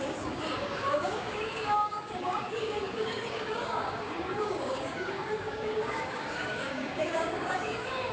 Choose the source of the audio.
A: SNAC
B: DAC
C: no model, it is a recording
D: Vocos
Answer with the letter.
B